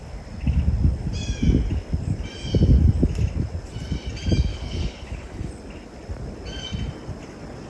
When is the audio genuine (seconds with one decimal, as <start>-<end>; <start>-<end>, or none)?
0.0-4.5; 5.5-7.7